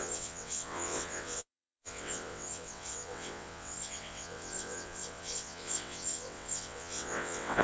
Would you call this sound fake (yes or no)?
yes